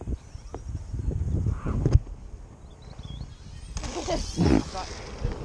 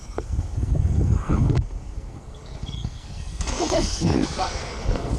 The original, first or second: first